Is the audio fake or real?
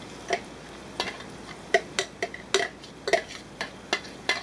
real